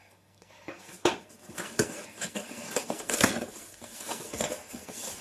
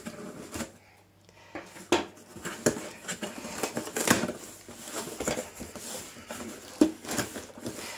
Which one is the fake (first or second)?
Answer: first